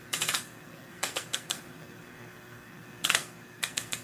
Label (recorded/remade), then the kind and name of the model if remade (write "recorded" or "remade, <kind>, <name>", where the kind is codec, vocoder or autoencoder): remade, codec, SNAC